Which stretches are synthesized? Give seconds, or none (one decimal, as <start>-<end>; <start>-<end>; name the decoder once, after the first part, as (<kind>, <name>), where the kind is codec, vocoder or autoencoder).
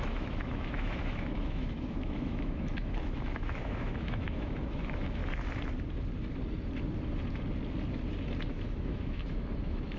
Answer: 0.0-5.2 (autoencoder, DAC-VAE); 8.5-10.0